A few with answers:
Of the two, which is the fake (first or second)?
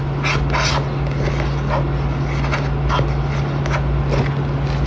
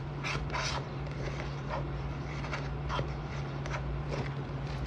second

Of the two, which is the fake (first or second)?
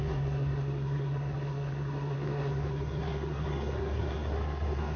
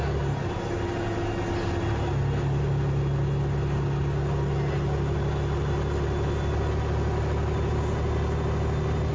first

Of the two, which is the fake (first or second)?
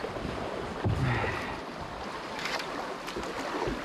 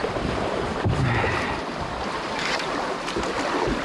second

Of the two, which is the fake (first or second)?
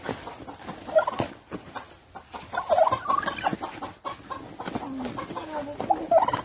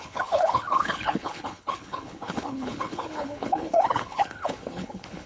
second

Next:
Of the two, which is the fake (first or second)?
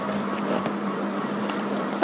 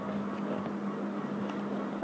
first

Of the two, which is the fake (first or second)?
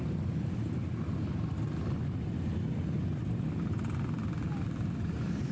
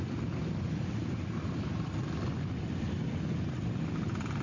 second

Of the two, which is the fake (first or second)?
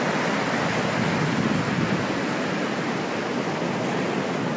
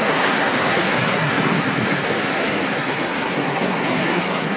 second